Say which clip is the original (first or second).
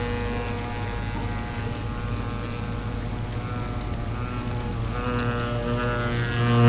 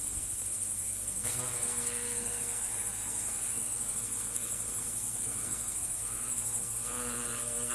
first